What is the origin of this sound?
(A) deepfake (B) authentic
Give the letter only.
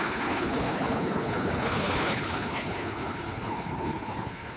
A